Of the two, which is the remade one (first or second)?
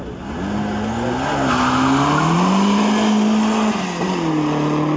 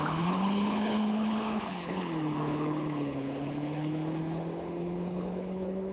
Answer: second